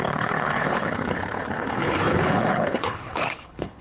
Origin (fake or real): fake